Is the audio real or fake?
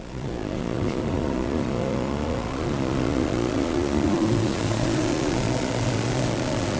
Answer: fake